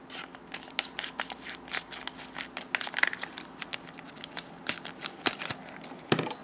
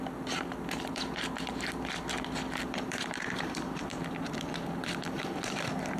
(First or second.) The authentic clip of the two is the first